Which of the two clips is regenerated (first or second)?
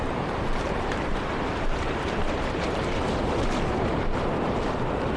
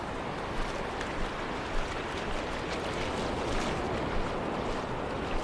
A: first